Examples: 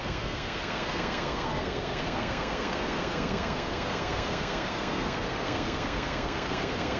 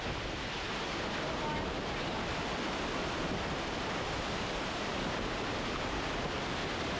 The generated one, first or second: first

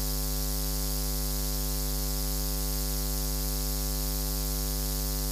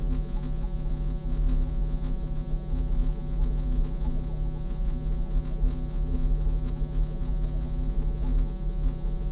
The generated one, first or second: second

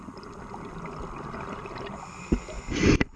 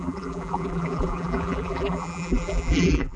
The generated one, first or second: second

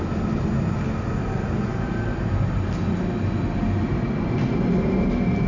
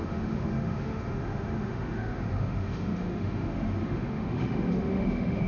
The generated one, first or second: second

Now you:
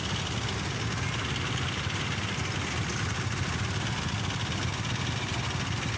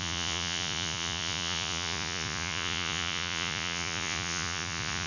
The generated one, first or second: second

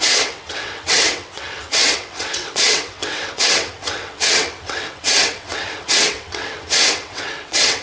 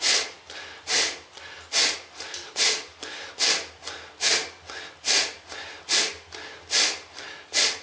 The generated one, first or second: first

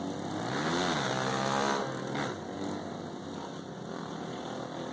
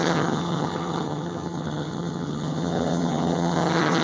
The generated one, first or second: second